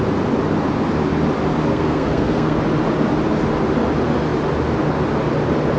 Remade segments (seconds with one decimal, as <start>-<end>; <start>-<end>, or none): 1.7-2.6